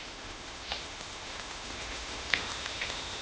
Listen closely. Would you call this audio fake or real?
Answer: fake